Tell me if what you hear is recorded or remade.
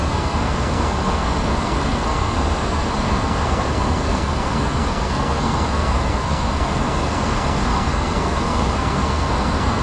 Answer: remade